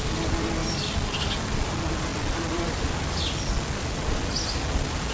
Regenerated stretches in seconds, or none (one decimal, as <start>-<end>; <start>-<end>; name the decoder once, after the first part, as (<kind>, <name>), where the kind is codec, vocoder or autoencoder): 0.6-1.2 (vocoder, BigVGAN v2)